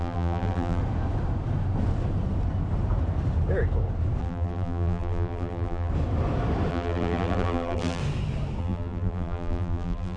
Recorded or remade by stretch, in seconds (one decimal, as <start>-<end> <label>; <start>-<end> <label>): 0.0-0.8 remade; 0.8-4.2 recorded; 4.2-5.9 remade; 5.9-6.7 recorded; 6.7-8.0 remade; 8.0-8.6 recorded; 8.6-10.2 remade